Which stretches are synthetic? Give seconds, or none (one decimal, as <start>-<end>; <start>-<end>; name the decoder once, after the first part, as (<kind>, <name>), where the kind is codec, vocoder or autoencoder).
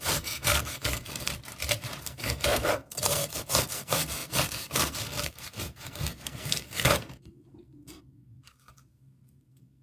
0.0-1.3 (codec, SNAC); 2.0-9.8